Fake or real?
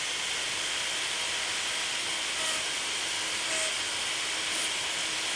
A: real